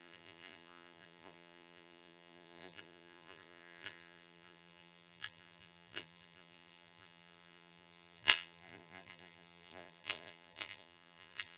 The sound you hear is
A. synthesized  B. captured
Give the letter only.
A